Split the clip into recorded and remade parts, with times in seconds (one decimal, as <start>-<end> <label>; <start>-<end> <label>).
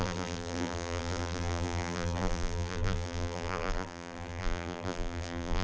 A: 0.0-5.6 remade